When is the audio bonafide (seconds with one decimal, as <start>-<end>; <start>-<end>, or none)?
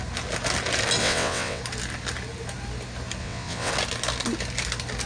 0.0-1.0; 1.6-3.2; 3.7-5.1